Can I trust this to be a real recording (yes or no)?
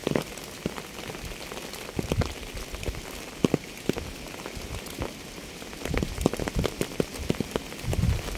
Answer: yes